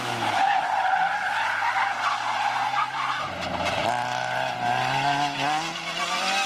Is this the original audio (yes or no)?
yes